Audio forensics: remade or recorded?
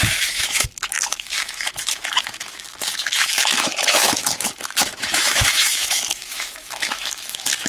remade